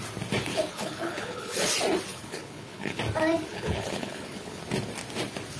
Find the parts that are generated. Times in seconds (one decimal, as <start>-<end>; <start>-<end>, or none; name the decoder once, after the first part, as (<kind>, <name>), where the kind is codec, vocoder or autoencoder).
0.5-1.7 (codec, HILCodec); 2.1-3.0; 3.5-4.6